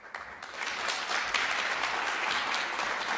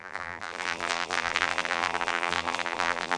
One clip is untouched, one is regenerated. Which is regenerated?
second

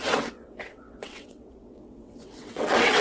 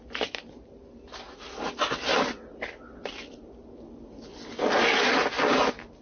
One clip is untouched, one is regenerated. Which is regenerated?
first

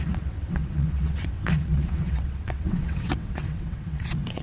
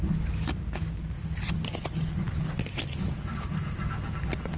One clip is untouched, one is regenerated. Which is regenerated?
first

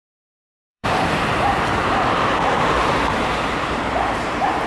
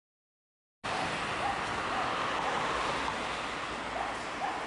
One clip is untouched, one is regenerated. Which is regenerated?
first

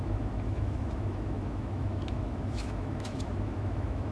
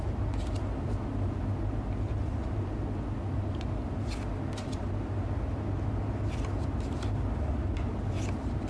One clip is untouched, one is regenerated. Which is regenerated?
first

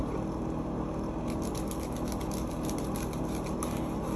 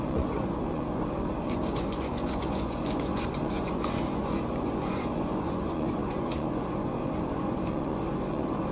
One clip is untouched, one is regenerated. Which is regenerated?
second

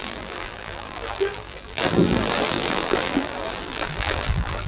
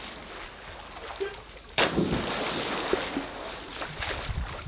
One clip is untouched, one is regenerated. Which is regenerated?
first